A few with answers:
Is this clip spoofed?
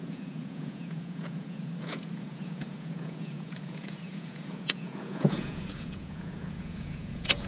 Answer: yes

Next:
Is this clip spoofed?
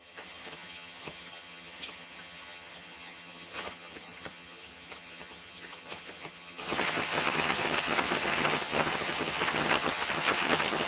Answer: yes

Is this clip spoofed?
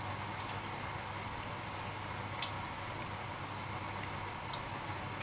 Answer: no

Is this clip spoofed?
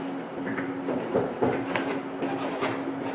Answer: no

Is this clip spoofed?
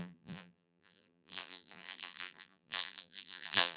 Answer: yes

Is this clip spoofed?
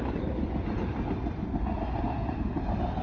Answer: no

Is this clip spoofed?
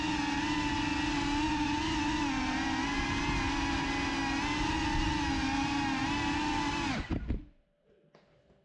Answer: no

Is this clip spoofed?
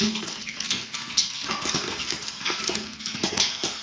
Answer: yes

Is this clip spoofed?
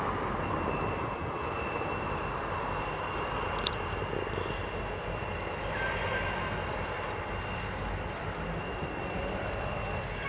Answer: no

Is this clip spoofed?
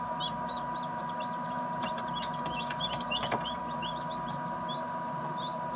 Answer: yes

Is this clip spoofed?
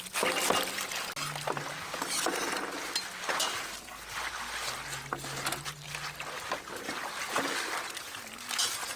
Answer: no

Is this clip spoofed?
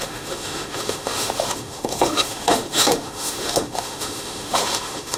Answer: yes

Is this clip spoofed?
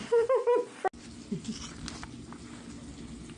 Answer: no